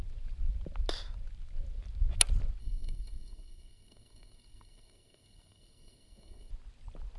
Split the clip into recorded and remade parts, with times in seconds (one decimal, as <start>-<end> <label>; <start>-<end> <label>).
0.0-2.6 recorded; 2.6-6.5 remade; 6.5-7.2 recorded